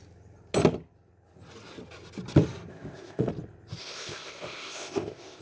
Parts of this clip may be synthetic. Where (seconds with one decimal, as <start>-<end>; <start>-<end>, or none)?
2.7-3.3; 3.8-5.4